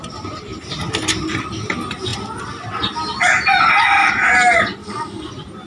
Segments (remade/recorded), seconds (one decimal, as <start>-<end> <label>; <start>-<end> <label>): 0.0-4.8 recorded; 4.8-5.3 remade; 5.3-5.7 recorded